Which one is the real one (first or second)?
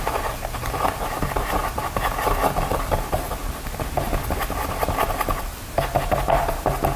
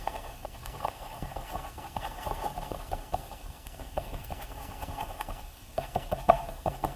first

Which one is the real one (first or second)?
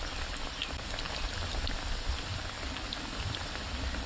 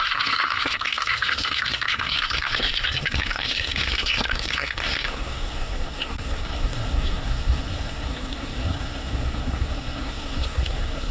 first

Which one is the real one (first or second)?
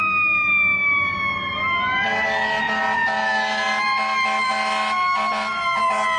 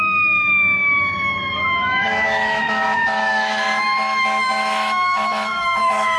first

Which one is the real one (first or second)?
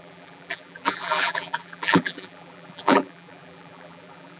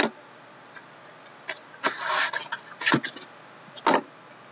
second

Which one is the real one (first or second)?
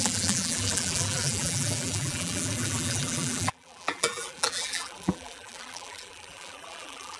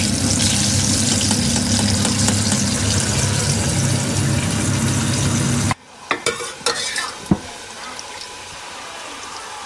second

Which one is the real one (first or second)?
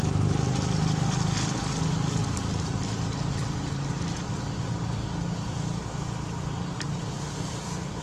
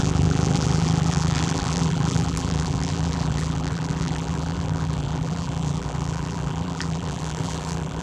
first